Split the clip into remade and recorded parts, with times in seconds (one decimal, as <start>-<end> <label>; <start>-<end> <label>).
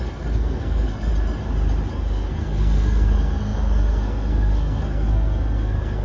0.0-1.1 remade; 1.1-1.9 recorded; 1.9-6.0 remade